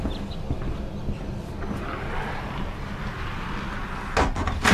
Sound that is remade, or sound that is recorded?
recorded